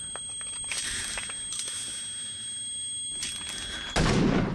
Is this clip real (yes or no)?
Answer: yes